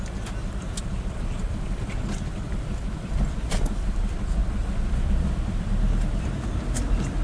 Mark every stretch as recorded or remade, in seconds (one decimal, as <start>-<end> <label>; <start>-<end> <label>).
0.0-7.2 remade